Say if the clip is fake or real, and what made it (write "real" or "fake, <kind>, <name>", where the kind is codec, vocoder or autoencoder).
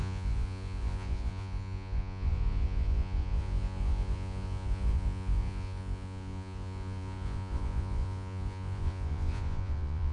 fake, vocoder, Vocos